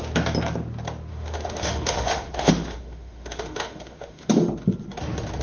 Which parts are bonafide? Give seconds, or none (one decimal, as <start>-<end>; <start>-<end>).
0.0-1.1; 4.3-5.4